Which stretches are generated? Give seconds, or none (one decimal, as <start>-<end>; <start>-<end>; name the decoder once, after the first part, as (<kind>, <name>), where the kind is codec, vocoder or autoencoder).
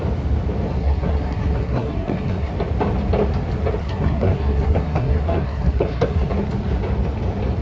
0.8-2.5 (codec, SNAC); 3.8-6.3